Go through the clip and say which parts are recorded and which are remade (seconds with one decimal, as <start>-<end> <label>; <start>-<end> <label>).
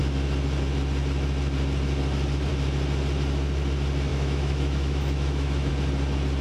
0.0-4.1 recorded; 4.1-5.7 remade; 5.7-6.4 recorded